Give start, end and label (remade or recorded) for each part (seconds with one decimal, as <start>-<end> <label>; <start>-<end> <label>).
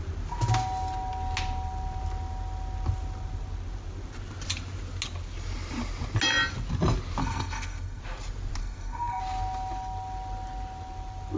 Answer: 0.0-7.2 recorded; 7.2-8.0 remade; 8.0-8.6 recorded; 8.6-9.2 remade; 9.2-11.4 recorded